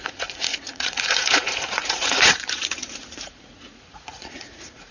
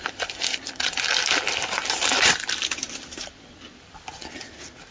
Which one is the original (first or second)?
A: second